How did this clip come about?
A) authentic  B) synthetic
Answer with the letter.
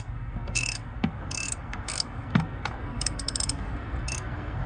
B